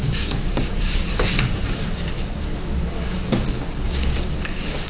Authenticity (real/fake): fake